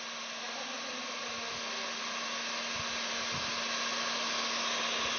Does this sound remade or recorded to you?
recorded